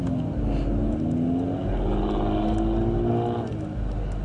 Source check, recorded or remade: recorded